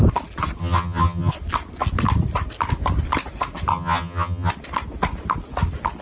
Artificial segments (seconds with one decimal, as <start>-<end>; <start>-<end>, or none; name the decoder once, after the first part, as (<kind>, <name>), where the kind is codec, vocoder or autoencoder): 0.6-1.3 (vocoder, HiFi-GAN); 3.7-4.5